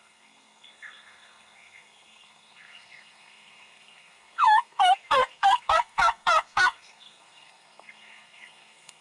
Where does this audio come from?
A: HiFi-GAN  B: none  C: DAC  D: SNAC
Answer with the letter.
D